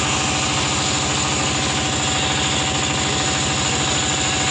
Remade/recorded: recorded